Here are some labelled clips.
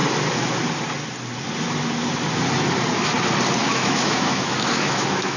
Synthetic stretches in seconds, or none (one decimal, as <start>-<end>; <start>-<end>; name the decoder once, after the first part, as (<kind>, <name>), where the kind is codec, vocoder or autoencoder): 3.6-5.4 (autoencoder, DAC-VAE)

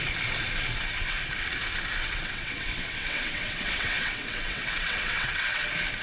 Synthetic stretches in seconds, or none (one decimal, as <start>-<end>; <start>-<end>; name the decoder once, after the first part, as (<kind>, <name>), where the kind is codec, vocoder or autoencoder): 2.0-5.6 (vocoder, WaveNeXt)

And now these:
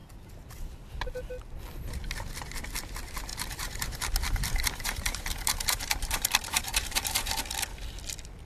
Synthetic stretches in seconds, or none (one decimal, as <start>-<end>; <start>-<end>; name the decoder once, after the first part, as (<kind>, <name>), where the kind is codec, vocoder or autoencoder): 3.3-7.4 (vocoder, BigVGAN v2)

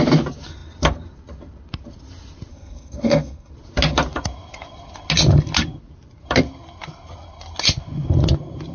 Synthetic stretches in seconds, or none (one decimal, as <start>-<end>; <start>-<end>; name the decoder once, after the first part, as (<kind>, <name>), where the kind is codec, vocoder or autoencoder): 2.5-3.5 (codec, SNAC)